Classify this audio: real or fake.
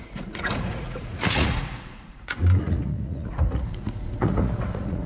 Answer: fake